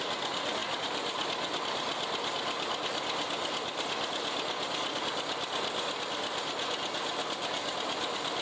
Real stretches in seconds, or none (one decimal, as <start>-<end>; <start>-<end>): 0.0-8.4